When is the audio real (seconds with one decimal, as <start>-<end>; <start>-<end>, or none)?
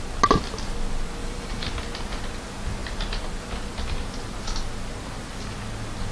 0.0-1.2; 1.7-6.1